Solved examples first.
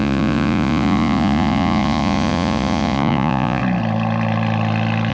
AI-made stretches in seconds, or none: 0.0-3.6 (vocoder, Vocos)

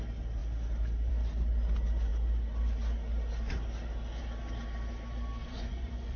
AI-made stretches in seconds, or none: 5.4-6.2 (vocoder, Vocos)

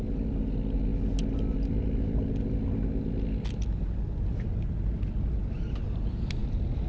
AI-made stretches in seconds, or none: none

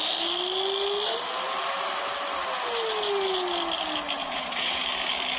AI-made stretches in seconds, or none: 4.2-4.8 (vocoder, Vocos)

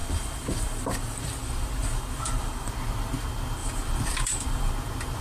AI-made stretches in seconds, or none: 0.0-2.7 (vocoder, BigVGAN v2); 3.6-4.7